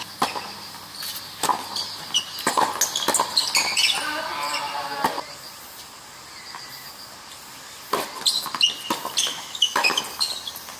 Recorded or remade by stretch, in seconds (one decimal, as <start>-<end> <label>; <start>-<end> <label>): 0.0-9.3 recorded; 9.3-10.0 remade; 10.0-10.8 recorded

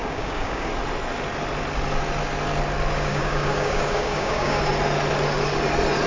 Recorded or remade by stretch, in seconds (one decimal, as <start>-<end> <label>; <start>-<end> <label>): 0.0-0.7 remade; 0.7-3.1 recorded; 3.1-4.6 remade; 4.6-6.1 recorded

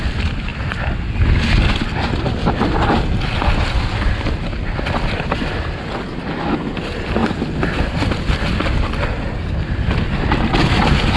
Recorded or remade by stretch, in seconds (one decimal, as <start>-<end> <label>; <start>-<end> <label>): 0.0-11.2 recorded

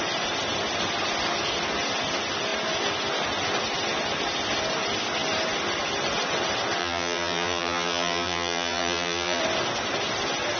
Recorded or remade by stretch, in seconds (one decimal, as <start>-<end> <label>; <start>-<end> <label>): 0.0-6.8 recorded; 6.8-9.4 remade; 9.4-10.6 recorded

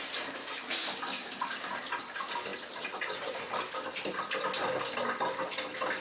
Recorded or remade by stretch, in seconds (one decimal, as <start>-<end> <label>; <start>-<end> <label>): 0.0-0.8 recorded; 0.8-1.7 remade; 1.7-6.0 recorded

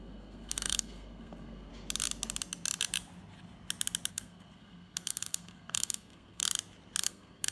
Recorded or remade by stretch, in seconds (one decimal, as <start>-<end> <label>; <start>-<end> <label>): 0.0-1.7 remade; 1.7-4.1 recorded; 4.1-6.4 remade; 6.4-7.0 recorded; 7.0-7.5 remade